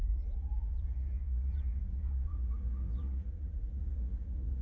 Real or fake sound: fake